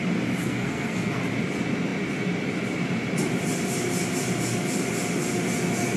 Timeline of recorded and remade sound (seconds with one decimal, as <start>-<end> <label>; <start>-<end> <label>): 0.0-0.4 recorded; 0.4-1.2 remade; 1.2-6.0 recorded

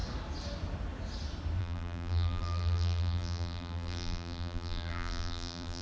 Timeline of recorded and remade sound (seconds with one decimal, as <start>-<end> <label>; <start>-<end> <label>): 0.0-1.6 recorded; 1.6-5.8 remade

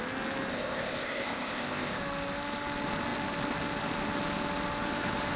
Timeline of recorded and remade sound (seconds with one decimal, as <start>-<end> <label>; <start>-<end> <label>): 0.0-0.5 recorded; 0.5-2.0 remade; 2.0-5.4 recorded

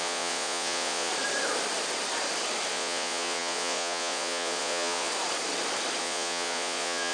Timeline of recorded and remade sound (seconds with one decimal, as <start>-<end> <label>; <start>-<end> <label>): 0.0-1.1 remade; 1.1-2.7 recorded; 2.7-5.1 remade; 5.1-6.0 recorded; 6.0-7.1 remade